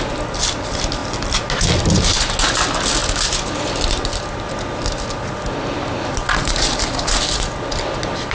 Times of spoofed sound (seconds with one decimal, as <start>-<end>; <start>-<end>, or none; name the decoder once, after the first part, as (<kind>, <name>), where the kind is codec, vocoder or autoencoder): none